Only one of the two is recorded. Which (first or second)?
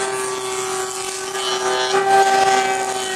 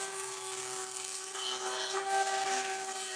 first